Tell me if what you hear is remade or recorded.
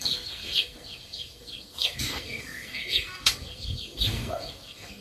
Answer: remade